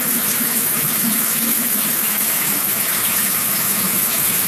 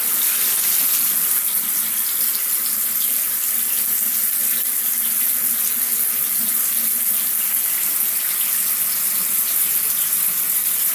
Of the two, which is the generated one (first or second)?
first